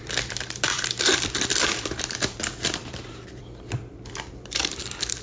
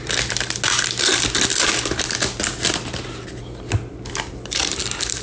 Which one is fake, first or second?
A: first